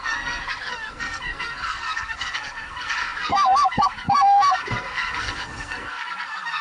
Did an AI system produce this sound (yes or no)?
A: yes